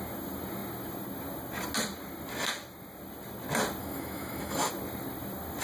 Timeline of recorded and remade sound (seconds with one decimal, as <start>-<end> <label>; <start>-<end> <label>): 0.0-3.8 recorded; 3.8-4.7 remade; 4.7-5.6 recorded